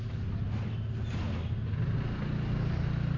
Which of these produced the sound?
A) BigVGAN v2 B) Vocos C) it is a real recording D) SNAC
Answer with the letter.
C